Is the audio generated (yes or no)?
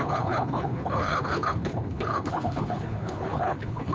yes